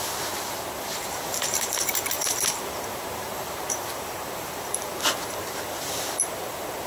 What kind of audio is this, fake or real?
fake